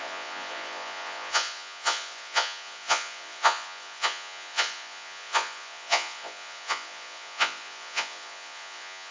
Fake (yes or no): yes